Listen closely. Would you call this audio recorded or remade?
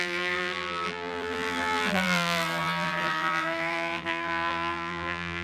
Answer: remade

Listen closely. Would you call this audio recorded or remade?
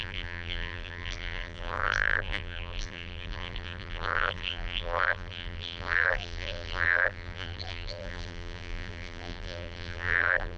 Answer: remade